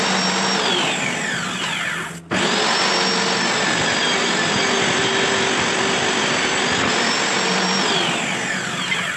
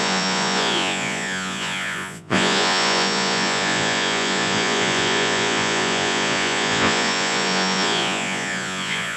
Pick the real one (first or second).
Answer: first